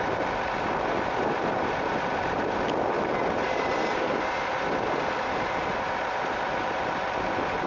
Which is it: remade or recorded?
recorded